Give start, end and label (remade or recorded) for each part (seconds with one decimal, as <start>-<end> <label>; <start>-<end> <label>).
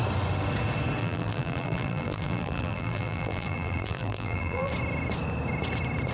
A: 0.0-1.0 recorded; 1.0-4.7 remade; 4.7-6.1 recorded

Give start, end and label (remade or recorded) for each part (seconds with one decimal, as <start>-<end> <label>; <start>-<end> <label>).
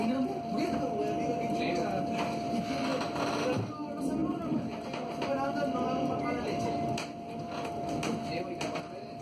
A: 0.0-4.2 recorded; 4.2-4.7 remade; 4.7-9.2 recorded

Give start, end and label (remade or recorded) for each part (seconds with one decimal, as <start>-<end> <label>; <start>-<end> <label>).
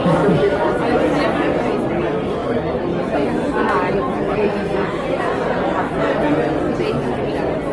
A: 0.0-7.7 recorded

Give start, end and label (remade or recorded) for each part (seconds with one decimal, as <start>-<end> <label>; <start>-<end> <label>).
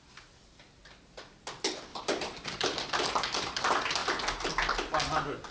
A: 0.0-1.9 recorded; 1.9-2.9 remade; 2.9-5.5 recorded